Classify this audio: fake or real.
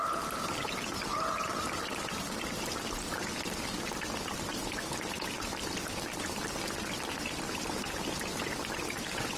real